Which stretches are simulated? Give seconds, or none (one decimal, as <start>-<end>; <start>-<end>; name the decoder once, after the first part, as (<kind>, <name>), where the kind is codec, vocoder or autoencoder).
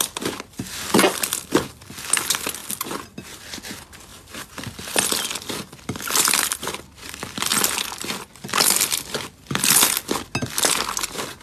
none